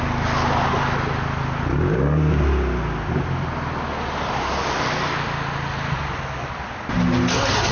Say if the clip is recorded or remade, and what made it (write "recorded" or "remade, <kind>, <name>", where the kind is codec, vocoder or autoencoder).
recorded